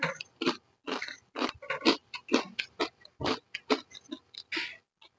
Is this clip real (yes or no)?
yes